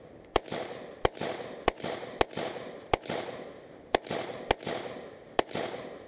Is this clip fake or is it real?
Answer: real